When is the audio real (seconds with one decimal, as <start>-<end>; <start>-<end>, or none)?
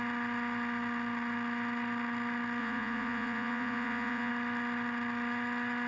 0.0-2.6; 4.3-5.9